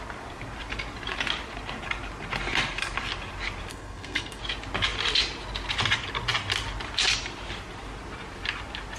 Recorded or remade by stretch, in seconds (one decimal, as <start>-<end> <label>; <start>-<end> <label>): 0.0-3.7 recorded; 3.7-4.4 remade; 4.4-9.0 recorded